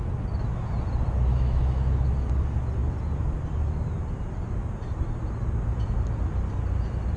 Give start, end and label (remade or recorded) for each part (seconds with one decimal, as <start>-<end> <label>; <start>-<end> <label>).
0.0-1.3 recorded; 1.3-2.3 remade; 2.3-7.2 recorded